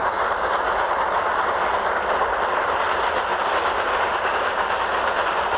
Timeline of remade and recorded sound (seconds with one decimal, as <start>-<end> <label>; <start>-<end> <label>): 0.0-5.6 recorded